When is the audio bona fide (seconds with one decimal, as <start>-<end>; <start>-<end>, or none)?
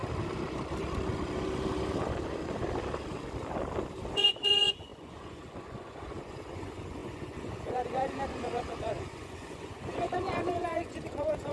0.0-4.1